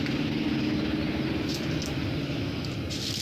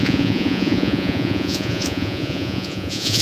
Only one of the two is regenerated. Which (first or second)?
second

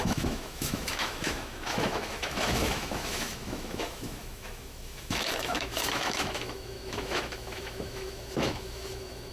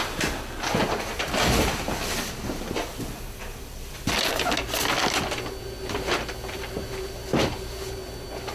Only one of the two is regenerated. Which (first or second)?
first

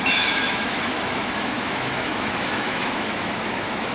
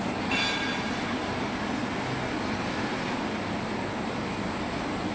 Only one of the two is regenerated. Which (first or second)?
first